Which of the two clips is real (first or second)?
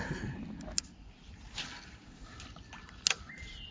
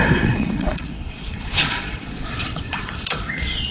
first